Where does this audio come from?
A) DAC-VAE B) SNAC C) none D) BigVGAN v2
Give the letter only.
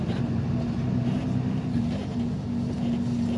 C